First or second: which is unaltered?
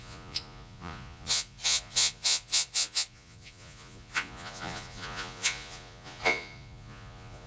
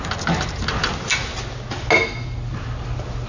second